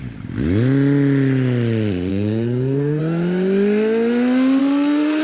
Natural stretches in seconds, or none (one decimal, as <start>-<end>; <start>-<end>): 0.0-2.1; 3.0-4.6